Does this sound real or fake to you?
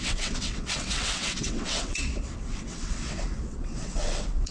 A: fake